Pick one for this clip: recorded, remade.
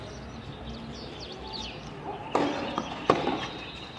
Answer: recorded